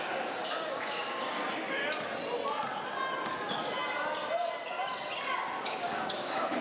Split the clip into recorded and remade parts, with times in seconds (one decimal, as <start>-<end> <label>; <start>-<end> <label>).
0.0-1.8 remade; 1.8-5.8 recorded; 5.8-6.6 remade